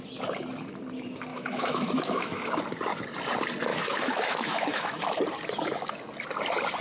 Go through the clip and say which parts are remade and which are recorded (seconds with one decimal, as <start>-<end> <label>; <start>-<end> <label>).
0.0-1.3 recorded; 1.3-2.6 remade; 2.6-3.7 recorded; 3.7-5.2 remade; 5.2-6.8 recorded